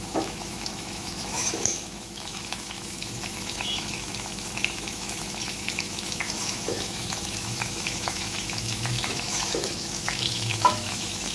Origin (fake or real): fake